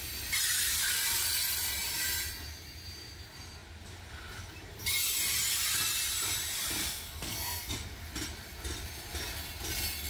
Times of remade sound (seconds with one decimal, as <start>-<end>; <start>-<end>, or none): 6.8-7.7